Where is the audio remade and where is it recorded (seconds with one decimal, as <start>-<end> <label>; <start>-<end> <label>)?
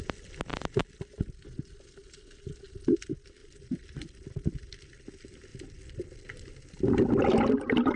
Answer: 0.0-0.5 recorded; 0.5-1.9 remade; 1.9-3.4 recorded; 3.4-5.0 remade; 5.0-5.5 recorded; 5.5-7.2 remade; 7.2-8.0 recorded